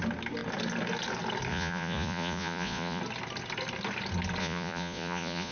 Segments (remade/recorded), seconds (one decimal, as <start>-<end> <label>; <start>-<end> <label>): 0.0-1.5 recorded; 1.5-3.0 remade; 3.0-4.4 recorded; 4.4-5.5 remade